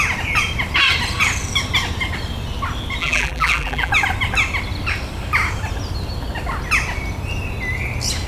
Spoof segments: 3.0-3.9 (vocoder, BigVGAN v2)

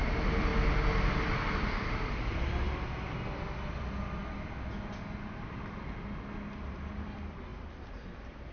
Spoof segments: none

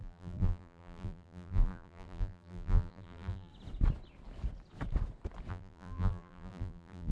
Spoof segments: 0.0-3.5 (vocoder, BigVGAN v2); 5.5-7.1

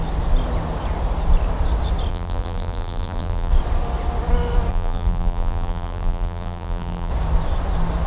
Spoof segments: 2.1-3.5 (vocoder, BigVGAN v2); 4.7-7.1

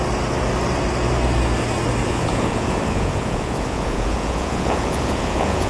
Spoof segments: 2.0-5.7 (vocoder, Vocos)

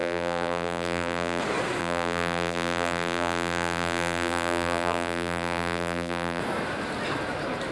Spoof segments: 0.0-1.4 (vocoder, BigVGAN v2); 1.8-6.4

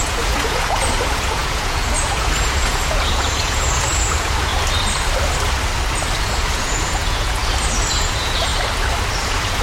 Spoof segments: 0.0-4.5 (vocoder, Vocos); 6.2-7.4; 7.9-8.5; 9.2-9.6